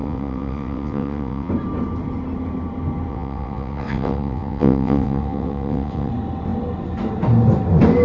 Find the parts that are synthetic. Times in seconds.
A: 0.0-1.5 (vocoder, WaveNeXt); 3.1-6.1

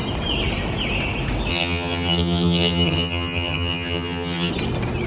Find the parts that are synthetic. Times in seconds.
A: 1.5-4.5 (vocoder, HiFi-GAN)

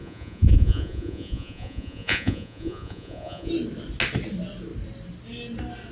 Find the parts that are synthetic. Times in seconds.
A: 0.0-3.5 (vocoder, Vocos)

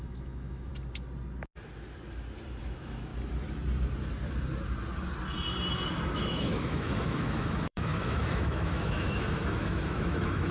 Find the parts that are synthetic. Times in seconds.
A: 0.0-0.7 (autoencoder, DAC-VAE); 2.6-3.1; 6.1-10.5

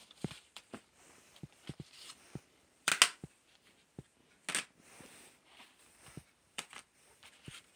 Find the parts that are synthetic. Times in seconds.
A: 0.0-2.9 (vocoder, BigVGAN v2); 5.8-7.8

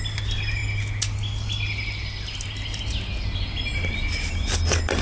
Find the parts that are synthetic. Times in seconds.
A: none

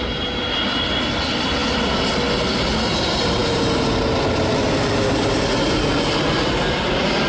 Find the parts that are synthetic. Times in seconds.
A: none